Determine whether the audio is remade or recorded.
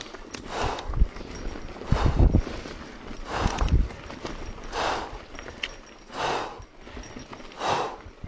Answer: recorded